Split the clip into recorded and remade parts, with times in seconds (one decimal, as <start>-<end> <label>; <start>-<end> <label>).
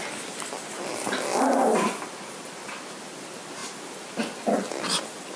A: 0.0-5.4 recorded